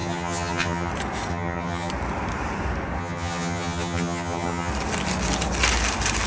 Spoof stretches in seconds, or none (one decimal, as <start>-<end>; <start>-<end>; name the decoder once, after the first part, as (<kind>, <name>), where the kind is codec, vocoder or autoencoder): 0.0-0.9 (vocoder, HiFi-GAN); 1.3-1.9; 3.0-4.7